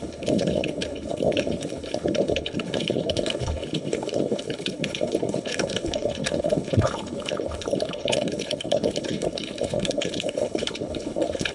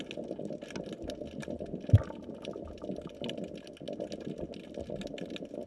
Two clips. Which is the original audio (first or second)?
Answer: second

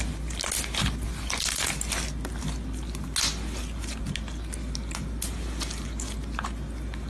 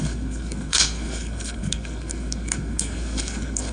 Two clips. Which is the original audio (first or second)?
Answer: first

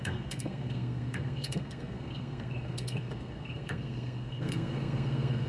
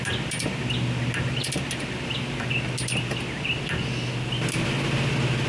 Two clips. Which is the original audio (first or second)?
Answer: second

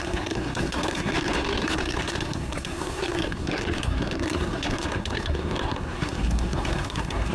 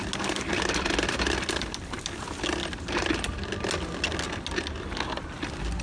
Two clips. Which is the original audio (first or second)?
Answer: second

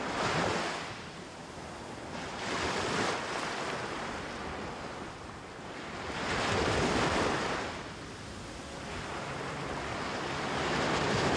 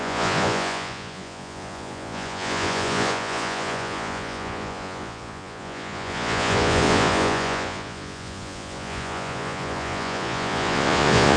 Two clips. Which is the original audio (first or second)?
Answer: first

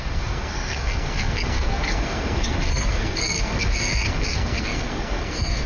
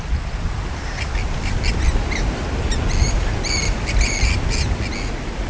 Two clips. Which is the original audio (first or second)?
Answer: second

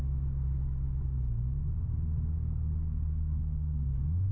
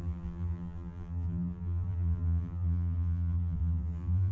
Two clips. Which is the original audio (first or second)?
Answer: first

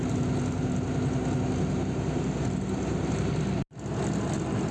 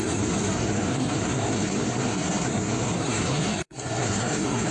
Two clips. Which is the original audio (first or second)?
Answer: first